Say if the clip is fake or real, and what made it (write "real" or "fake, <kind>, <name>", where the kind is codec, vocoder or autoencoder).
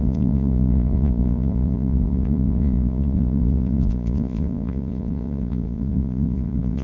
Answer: fake, vocoder, Vocos